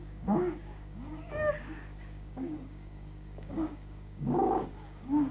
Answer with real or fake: fake